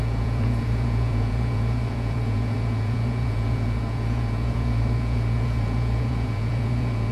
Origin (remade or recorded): remade